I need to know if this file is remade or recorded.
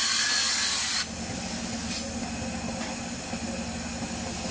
recorded